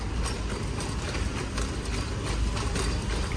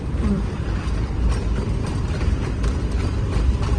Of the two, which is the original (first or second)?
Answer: first